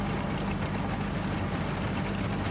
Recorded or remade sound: recorded